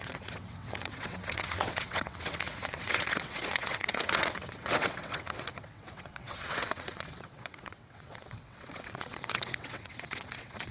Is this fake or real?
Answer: fake